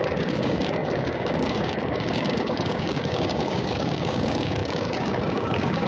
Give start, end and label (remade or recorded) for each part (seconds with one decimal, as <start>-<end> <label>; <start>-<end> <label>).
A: 0.0-5.9 remade